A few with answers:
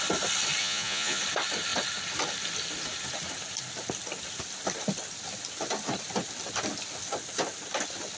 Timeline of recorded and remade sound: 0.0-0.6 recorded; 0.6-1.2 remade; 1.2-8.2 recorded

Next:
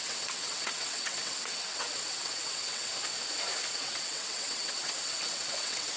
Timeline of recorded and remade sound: 0.0-2.9 remade; 2.9-3.7 recorded; 3.7-6.0 remade

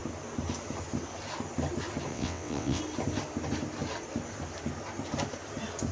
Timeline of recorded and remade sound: 0.0-2.1 recorded; 2.1-2.8 remade; 2.8-5.9 recorded